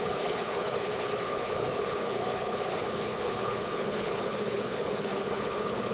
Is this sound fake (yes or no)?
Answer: yes